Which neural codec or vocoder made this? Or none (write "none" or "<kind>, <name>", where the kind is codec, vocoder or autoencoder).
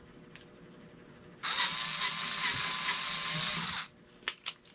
none